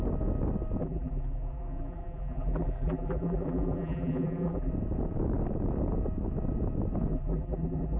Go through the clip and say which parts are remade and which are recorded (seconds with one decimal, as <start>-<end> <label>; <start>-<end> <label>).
0.0-0.8 recorded; 0.8-4.7 remade; 4.7-7.1 recorded; 7.1-8.0 remade